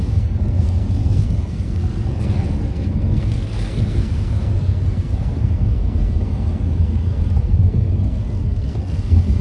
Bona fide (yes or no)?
no